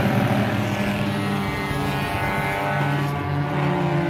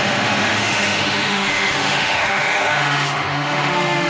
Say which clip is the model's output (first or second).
second